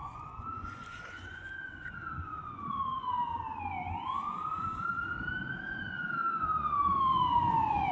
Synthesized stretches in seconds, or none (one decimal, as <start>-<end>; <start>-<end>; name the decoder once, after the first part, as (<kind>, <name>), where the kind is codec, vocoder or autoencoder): 0.0-3.3 (vocoder, Vocos); 4.2-5.1; 5.7-7.9